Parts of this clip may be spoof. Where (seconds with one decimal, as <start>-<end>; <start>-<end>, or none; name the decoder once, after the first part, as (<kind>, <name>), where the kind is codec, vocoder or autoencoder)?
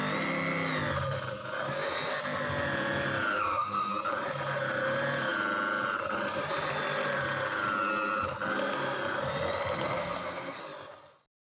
3.3-3.9 (codec, SNAC); 10.0-10.6